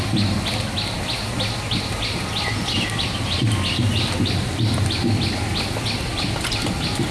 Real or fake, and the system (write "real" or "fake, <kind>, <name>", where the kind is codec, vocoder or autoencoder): real